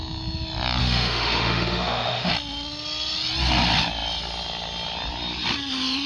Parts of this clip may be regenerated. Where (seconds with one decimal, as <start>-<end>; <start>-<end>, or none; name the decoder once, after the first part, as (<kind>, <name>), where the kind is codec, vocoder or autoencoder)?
0.8-2.3 (autoencoder, DAC-VAE)